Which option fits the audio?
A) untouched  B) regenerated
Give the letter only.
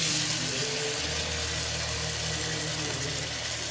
A